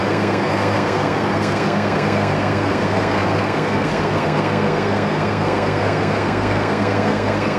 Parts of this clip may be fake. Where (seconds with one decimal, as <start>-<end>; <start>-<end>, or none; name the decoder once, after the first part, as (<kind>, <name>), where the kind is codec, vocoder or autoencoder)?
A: 0.0-7.6 (codec, SNAC)